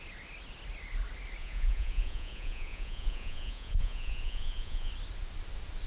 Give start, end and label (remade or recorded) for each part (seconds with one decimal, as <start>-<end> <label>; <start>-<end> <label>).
0.0-1.4 recorded; 1.4-4.9 remade; 4.9-5.9 recorded